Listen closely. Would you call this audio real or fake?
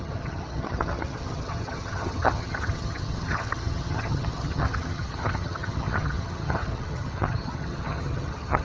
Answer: fake